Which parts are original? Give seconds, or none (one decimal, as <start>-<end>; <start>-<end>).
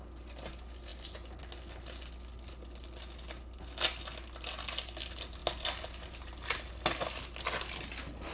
0.0-8.3